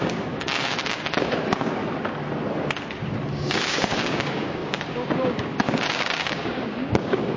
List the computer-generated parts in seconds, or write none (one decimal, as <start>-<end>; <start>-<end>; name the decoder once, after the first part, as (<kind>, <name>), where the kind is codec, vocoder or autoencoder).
0.0-1.8 (codec, DAC); 3.3-7.4